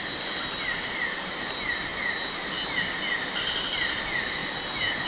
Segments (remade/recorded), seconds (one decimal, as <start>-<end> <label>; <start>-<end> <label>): 0.0-5.1 recorded